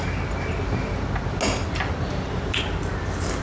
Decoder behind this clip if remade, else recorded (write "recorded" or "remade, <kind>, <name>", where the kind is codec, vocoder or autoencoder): recorded